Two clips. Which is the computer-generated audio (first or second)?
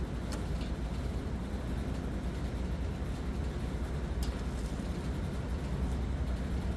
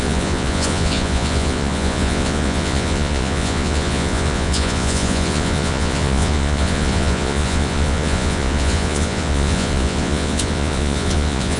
second